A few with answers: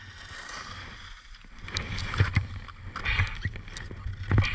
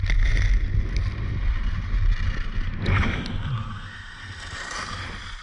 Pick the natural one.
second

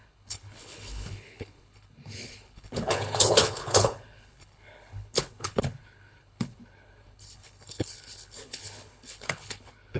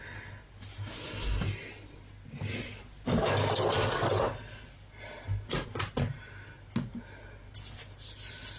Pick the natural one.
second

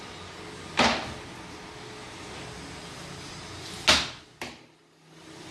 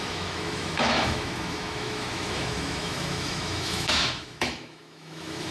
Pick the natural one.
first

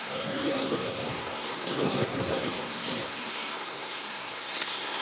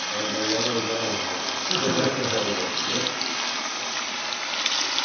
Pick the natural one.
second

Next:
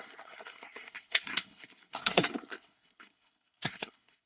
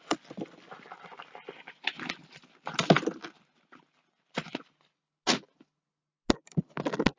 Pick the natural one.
second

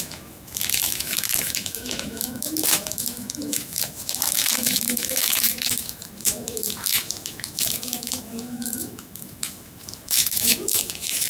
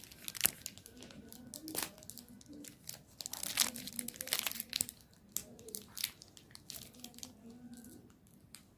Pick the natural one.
second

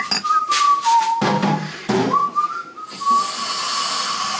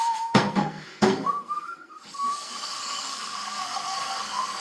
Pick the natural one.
first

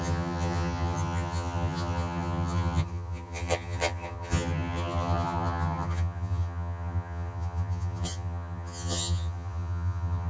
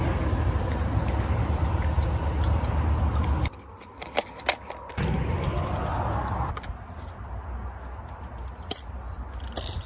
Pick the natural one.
second